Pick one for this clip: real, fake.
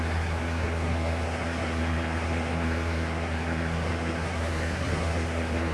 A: fake